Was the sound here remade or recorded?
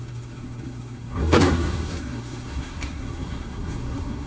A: remade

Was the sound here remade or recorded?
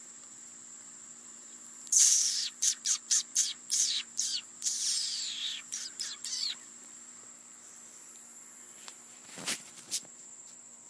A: remade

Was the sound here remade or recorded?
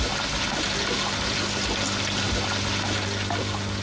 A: recorded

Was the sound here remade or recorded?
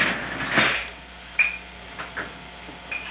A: recorded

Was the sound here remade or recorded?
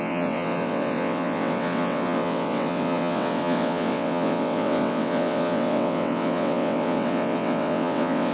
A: remade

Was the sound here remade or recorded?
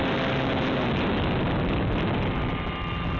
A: recorded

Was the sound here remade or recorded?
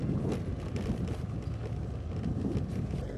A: recorded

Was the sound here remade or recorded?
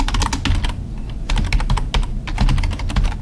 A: recorded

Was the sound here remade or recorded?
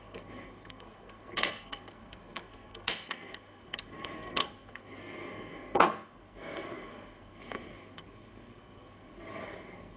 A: remade